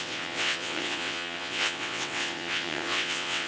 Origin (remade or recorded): remade